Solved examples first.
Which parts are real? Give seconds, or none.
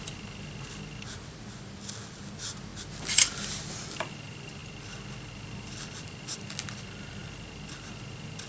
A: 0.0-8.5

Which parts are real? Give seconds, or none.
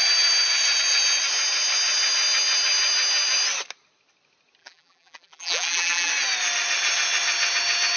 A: 0.0-4.6; 6.1-8.0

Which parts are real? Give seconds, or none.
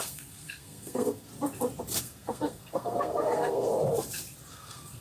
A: 1.3-2.0; 3.7-4.5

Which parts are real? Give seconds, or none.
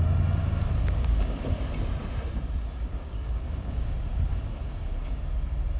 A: 0.0-0.4; 1.6-2.9; 3.9-4.3; 5.2-5.8